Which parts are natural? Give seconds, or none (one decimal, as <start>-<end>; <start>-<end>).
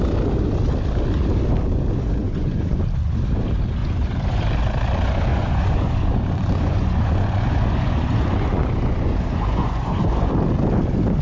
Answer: 0.0-2.2; 2.8-3.8; 4.4-5.3; 10.3-11.2